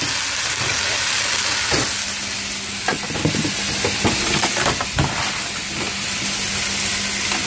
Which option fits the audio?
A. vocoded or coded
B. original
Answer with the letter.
B